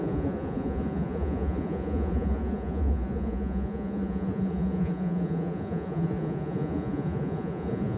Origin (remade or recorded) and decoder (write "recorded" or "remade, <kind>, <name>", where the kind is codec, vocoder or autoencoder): remade, vocoder, Vocos